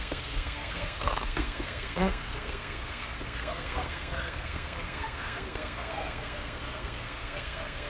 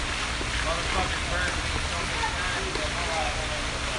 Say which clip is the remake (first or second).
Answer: first